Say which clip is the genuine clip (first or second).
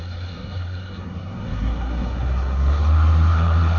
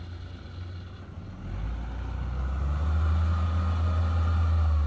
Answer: second